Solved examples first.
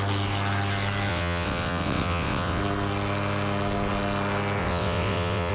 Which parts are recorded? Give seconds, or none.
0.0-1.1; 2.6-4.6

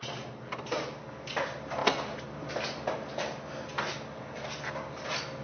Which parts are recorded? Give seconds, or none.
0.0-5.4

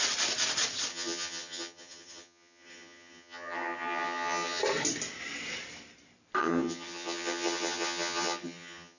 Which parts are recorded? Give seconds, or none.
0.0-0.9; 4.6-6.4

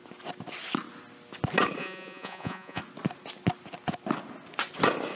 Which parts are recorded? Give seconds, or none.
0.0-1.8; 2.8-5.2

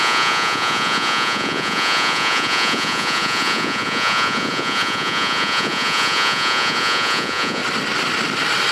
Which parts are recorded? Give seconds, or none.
7.6-8.7

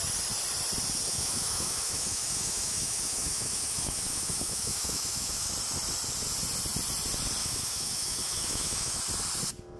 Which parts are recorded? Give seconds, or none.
0.0-1.1; 5.5-7.4; 9.0-9.8